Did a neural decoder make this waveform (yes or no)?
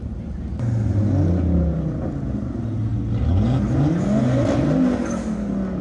no